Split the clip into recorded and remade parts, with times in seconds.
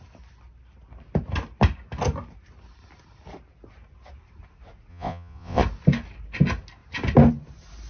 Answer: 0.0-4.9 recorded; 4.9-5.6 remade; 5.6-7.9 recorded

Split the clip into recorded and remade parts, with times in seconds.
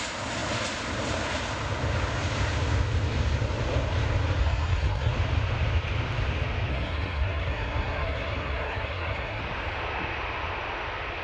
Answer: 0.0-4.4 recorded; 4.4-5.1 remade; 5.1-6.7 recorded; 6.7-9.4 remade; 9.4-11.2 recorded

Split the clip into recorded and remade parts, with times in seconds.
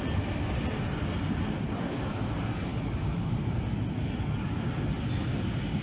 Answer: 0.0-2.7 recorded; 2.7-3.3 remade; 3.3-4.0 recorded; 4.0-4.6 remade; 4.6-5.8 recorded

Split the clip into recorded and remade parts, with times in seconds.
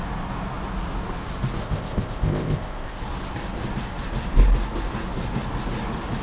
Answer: 0.0-1.6 recorded; 1.6-3.0 remade; 3.0-6.2 recorded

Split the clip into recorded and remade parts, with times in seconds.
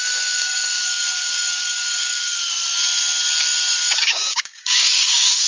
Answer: 0.0-2.4 remade; 2.4-3.7 recorded; 3.7-5.5 remade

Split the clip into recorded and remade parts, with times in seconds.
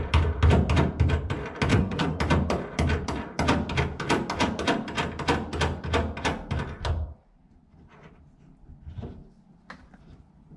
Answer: 0.0-1.7 recorded; 1.7-2.2 remade; 2.2-10.6 recorded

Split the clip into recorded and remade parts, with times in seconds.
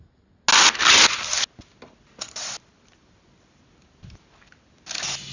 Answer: 0.0-5.3 recorded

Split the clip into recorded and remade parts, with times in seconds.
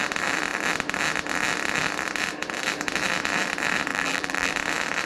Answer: 0.0-3.9 recorded; 3.9-4.5 remade; 4.5-5.1 recorded